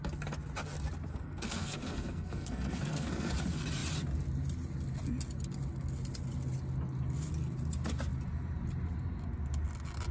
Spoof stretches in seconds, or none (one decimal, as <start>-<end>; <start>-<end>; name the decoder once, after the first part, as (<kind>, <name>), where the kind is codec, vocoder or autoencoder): 1.1-3.3 (codec, SNAC)